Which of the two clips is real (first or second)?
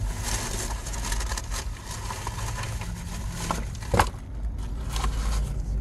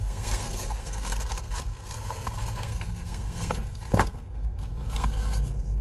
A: first